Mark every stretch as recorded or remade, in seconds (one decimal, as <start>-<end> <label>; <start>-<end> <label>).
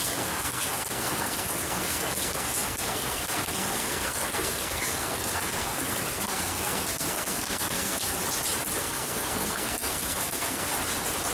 0.0-8.2 remade; 8.2-8.8 recorded; 8.8-10.7 remade; 10.7-11.3 recorded